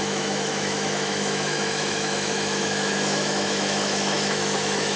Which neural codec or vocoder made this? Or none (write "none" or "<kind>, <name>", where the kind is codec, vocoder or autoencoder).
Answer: autoencoder, DAC-VAE